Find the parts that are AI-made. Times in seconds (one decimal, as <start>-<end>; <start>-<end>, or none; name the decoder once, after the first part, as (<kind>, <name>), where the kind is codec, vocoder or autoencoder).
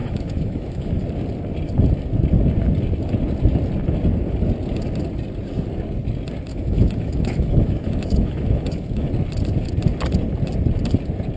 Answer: 0.0-1.0 (autoencoder, DAC-VAE); 6.5-9.1